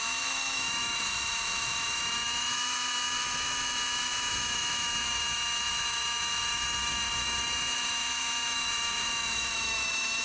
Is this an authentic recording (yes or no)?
no